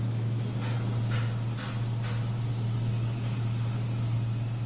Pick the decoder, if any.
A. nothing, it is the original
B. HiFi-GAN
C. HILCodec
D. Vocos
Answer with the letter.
A